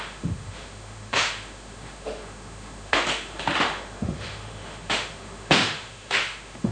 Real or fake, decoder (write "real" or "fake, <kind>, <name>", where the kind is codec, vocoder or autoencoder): fake, autoencoder, DAC-VAE